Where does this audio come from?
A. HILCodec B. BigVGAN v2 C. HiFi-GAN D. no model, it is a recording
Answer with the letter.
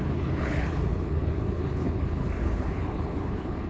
A